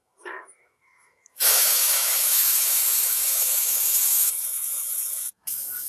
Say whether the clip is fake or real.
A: fake